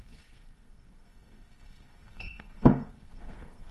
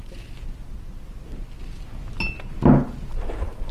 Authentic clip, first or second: second